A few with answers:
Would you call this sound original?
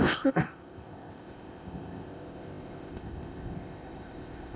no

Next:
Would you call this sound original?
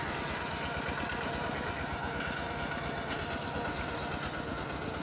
yes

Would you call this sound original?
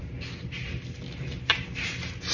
yes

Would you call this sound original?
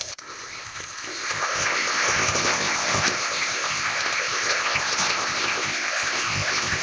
no